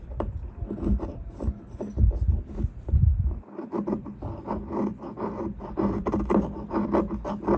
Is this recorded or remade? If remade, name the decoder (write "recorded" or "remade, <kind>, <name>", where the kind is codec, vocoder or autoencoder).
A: recorded